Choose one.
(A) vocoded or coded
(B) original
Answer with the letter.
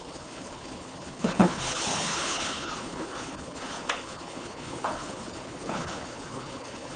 A